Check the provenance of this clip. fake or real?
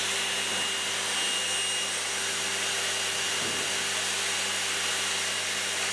real